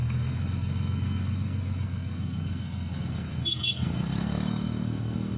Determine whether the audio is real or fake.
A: fake